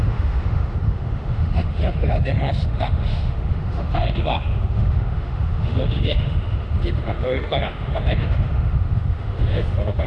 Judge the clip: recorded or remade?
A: remade